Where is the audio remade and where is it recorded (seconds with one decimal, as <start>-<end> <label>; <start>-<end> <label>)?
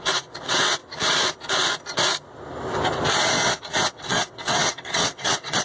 0.0-0.8 remade; 0.8-3.9 recorded; 3.9-5.6 remade